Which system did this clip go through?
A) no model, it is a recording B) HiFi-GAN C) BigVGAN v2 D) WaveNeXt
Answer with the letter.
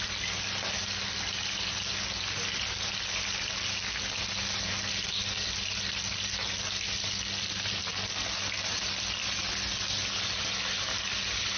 A